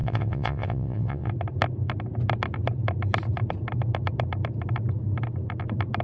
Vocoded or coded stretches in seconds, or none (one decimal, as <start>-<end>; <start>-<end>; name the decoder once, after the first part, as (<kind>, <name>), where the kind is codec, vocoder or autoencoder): 0.0-1.3 (vocoder, WaveNeXt)